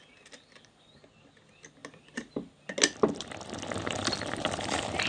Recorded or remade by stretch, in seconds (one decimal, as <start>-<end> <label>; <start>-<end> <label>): 0.0-5.1 recorded